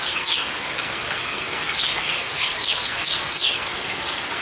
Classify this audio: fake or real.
fake